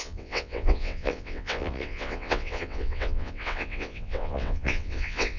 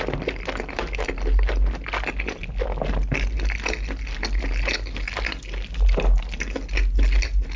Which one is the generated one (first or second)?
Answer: first